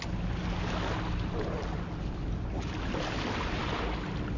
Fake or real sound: real